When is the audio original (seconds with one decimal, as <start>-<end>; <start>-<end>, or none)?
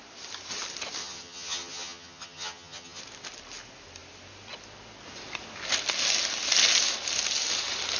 0.0-1.0; 3.0-8.0